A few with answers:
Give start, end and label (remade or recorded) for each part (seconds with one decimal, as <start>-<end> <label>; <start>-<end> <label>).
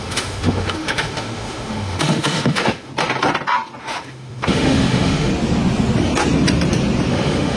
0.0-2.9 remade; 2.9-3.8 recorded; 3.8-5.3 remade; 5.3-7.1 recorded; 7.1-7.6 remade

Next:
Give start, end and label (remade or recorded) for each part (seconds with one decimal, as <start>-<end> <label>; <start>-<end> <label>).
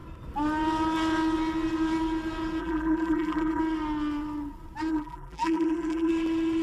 0.0-2.6 recorded; 2.6-3.6 remade; 3.6-4.9 recorded; 4.9-6.1 remade; 6.1-6.6 recorded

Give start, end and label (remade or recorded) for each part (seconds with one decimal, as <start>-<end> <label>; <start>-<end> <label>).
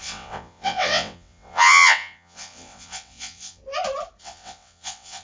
0.0-3.6 remade; 3.6-4.2 recorded; 4.2-5.2 remade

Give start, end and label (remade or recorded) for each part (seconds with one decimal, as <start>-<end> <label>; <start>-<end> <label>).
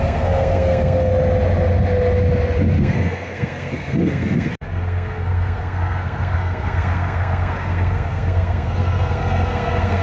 0.0-1.1 remade; 1.1-2.8 recorded; 2.8-10.0 remade